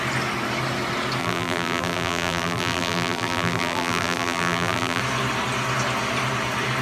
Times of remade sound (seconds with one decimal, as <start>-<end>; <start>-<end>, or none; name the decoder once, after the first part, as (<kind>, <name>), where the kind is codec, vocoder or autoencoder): 1.2-5.0 (vocoder, BigVGAN v2)